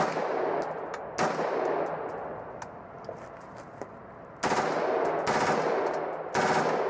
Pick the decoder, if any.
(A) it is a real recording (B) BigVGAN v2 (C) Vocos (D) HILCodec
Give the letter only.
A